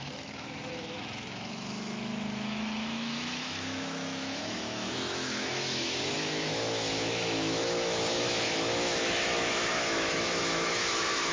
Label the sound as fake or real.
fake